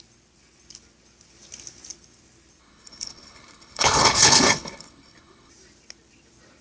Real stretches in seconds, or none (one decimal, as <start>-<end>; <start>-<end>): 0.0-2.6; 5.5-6.6